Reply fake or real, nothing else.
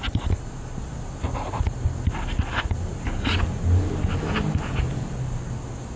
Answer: real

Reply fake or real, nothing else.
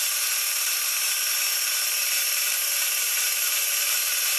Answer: fake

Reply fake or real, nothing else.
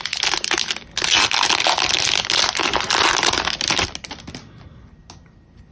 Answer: real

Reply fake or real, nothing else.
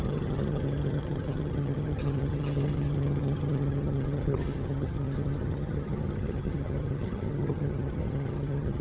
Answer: fake